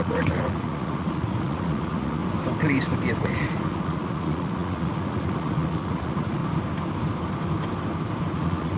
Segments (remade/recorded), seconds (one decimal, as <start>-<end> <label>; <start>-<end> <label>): 0.0-2.2 remade; 2.2-3.2 recorded; 3.2-6.4 remade; 6.4-8.3 recorded; 8.3-8.8 remade